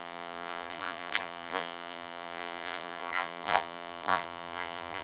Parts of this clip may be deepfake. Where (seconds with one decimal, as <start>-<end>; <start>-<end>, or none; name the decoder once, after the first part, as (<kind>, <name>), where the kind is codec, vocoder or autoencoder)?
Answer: 0.0-5.0 (vocoder, BigVGAN v2)

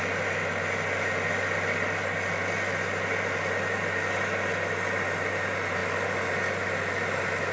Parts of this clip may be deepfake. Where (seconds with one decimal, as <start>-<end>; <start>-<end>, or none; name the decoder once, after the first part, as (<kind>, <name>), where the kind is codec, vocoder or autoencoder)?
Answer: none

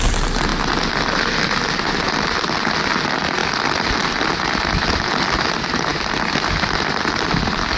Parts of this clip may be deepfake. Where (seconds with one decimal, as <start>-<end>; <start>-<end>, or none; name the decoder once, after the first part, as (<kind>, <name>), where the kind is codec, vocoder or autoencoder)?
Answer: none